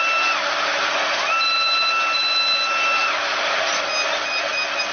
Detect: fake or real real